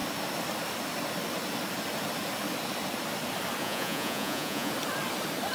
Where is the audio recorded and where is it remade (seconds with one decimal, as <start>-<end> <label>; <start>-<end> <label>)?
0.0-3.6 recorded; 3.6-4.7 remade; 4.7-5.5 recorded

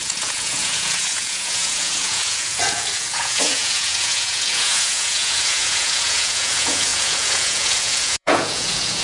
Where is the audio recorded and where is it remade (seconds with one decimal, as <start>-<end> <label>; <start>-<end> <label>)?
0.0-9.0 remade